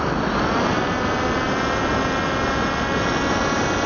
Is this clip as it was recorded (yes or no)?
yes